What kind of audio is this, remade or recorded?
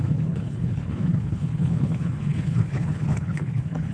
remade